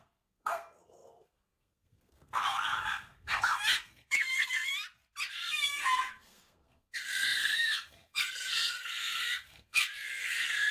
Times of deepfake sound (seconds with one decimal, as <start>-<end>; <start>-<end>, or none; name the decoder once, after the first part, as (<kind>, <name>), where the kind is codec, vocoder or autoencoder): 0.0-4.7 (codec, SNAC); 5.3-10.7